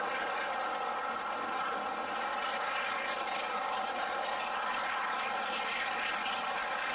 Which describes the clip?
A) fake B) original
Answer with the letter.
B